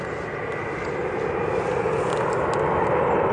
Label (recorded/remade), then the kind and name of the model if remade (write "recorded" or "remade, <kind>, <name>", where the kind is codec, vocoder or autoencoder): recorded